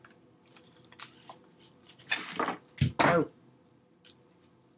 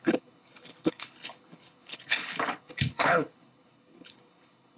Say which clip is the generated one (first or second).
second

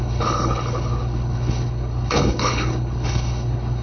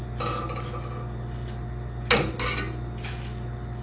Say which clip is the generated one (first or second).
first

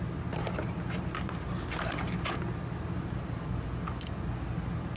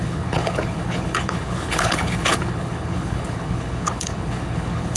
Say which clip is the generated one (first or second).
second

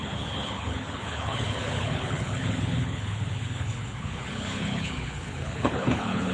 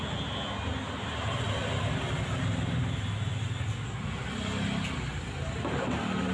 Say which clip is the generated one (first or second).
first